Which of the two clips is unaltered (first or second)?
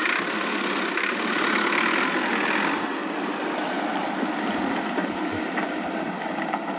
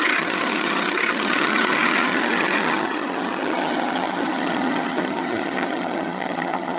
first